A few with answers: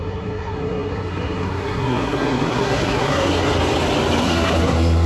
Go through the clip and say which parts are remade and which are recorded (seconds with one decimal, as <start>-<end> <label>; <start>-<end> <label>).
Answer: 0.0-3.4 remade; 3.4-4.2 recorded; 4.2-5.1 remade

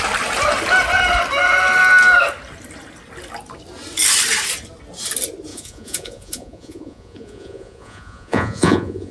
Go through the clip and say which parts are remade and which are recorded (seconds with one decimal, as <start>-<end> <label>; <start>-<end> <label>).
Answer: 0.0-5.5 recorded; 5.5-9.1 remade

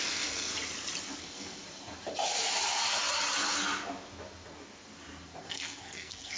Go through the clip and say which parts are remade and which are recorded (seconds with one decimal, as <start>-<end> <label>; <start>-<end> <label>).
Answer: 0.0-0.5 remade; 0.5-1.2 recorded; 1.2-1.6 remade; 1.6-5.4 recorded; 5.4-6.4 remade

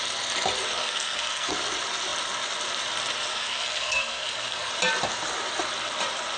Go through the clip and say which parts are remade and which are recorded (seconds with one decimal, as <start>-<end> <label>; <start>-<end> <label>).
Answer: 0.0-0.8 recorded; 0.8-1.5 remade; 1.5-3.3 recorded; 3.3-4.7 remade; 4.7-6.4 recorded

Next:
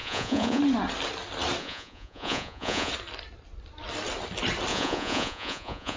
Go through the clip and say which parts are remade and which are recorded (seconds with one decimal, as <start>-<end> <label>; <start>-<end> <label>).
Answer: 0.0-0.6 remade; 0.6-1.6 recorded; 1.6-2.9 remade; 2.9-4.7 recorded; 4.7-6.0 remade

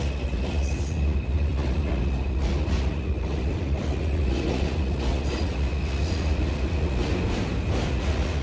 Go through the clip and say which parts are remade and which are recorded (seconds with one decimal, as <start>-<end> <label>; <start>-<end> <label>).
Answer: 0.0-7.1 remade; 7.1-7.9 recorded; 7.9-8.4 remade

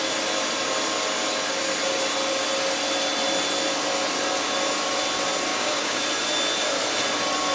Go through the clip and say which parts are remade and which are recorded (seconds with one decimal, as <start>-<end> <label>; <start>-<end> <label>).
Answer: 0.0-5.5 recorded; 5.5-6.0 remade; 6.0-7.5 recorded